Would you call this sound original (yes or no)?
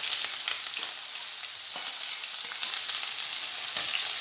yes